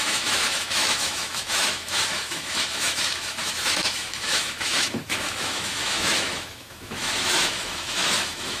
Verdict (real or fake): fake